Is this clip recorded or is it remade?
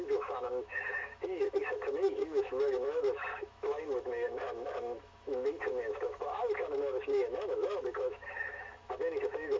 remade